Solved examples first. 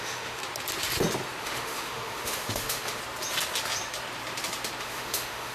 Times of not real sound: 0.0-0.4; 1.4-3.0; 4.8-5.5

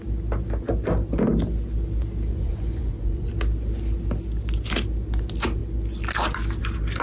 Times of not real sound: 2.3-3.3

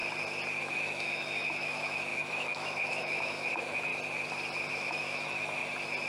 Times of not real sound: 0.6-3.9; 4.7-5.6

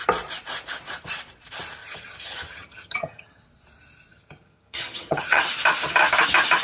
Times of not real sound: 1.8-3.4; 4.1-5.4

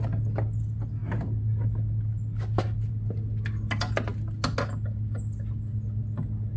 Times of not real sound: none

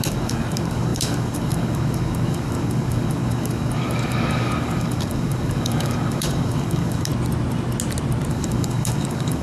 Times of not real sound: 0.0-7.1; 8.3-9.4